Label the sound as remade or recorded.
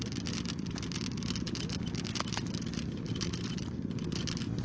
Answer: recorded